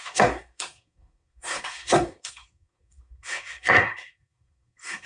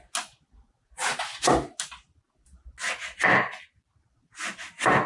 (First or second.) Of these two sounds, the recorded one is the second